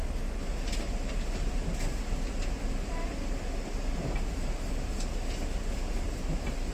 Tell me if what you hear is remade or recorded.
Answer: recorded